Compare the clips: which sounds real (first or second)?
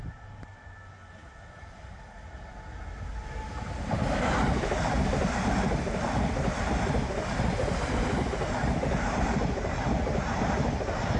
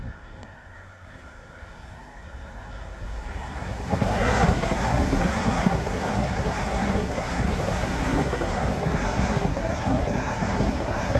first